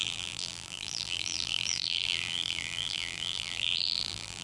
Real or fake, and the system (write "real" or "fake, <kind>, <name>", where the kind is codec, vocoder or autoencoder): fake, vocoder, BigVGAN v2